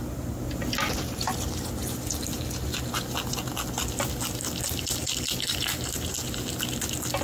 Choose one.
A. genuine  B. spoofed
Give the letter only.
A